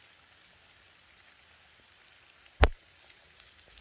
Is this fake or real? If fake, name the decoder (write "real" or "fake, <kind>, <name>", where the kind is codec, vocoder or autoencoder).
real